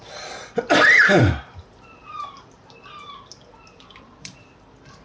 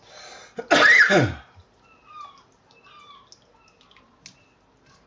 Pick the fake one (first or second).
first